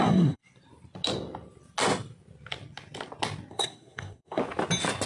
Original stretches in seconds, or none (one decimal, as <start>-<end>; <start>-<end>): 0.4-3.5; 4.4-5.1